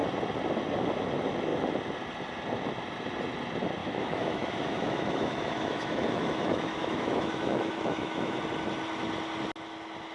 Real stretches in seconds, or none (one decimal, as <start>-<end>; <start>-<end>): 0.0-3.8; 8.4-10.1